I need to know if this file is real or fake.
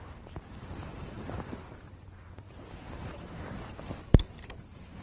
fake